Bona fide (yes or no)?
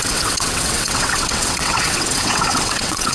no